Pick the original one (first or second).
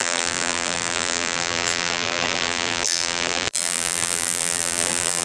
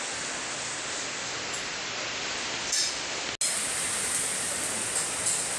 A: second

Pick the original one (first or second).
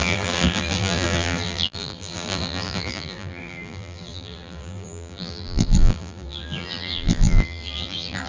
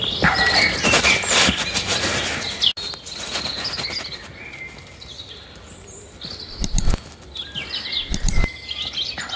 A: second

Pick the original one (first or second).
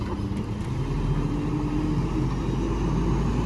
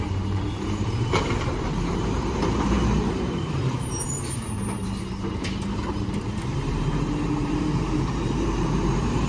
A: first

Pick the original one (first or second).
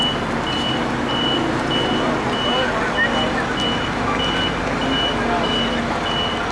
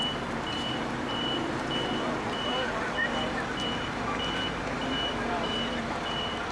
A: first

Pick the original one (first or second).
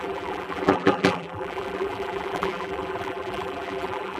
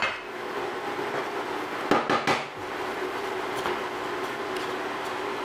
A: second